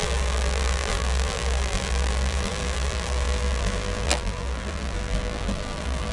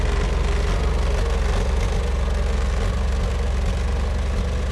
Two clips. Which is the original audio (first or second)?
second